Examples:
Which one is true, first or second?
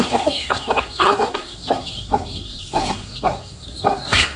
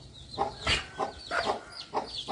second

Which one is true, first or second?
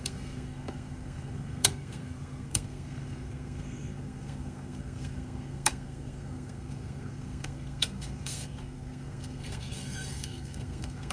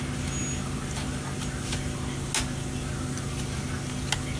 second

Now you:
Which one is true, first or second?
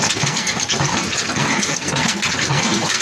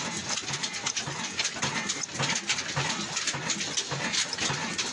second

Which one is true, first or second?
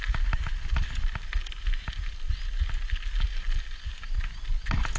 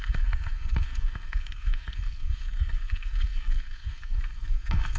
first